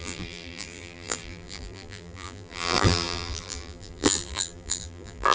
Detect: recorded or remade remade